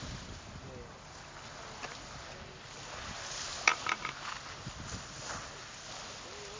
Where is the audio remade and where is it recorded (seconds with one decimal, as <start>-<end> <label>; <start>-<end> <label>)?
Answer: 0.0-6.6 recorded

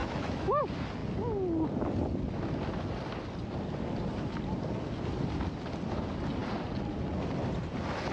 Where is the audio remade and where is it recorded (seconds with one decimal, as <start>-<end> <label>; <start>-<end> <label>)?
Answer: 0.0-0.6 remade; 0.6-8.1 recorded

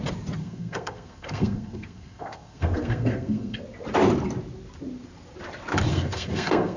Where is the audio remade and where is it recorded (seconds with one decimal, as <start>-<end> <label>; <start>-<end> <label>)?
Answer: 0.0-0.4 recorded; 0.4-3.6 remade; 3.6-5.9 recorded; 5.9-6.8 remade

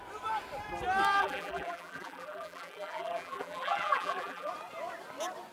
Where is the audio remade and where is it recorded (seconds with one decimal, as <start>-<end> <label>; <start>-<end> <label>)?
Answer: 0.0-1.2 recorded; 1.2-4.5 remade; 4.5-5.5 recorded

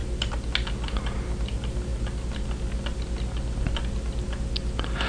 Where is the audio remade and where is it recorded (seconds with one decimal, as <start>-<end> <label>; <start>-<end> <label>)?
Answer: 0.0-5.1 recorded

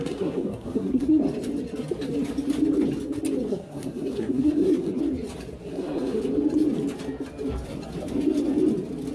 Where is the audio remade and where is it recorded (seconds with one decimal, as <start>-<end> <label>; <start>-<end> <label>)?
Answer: 0.0-1.2 remade; 1.2-3.5 recorded; 3.5-5.0 remade; 5.0-5.6 recorded; 5.6-6.2 remade; 6.2-9.1 recorded

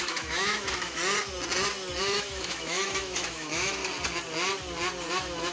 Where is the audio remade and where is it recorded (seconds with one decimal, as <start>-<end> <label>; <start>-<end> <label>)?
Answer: 0.0-1.0 remade; 1.0-2.0 recorded; 2.0-3.8 remade; 3.8-5.1 recorded; 5.1-5.5 remade